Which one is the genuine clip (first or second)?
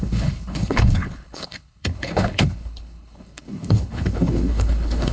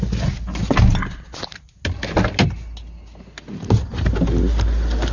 second